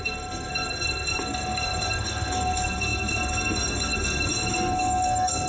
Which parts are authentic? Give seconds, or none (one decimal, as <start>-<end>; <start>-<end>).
none

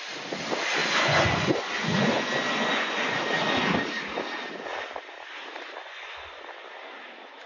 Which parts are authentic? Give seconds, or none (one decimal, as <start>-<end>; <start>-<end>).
0.0-0.8; 3.2-5.8; 6.4-7.5

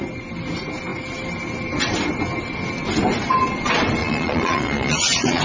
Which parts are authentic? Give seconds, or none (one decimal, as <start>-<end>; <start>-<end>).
0.0-4.0

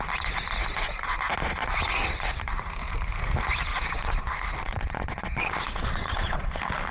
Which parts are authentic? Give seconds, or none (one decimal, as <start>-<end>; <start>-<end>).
0.0-3.7; 6.5-6.9

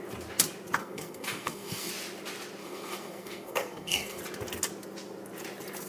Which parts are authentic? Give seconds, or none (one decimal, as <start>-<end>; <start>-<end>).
0.0-0.8; 1.9-2.6; 4.2-5.9

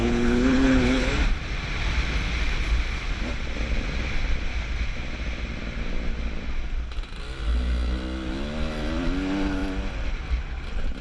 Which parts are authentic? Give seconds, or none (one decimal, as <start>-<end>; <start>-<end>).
1.1-11.0

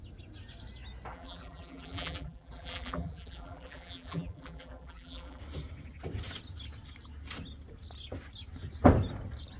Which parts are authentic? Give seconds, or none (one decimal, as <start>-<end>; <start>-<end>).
0.0-1.1; 5.4-9.6

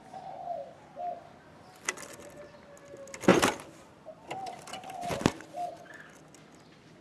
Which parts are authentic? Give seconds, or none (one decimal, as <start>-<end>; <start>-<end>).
0.0-7.0